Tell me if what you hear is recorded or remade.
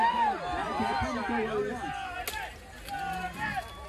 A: recorded